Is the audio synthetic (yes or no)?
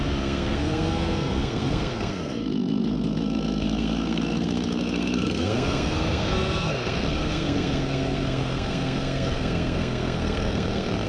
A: yes